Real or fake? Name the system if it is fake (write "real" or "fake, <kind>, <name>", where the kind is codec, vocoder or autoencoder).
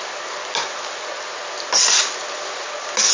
real